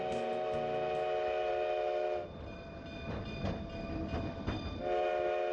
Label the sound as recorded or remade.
recorded